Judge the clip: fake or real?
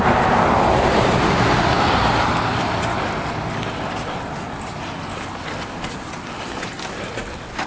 real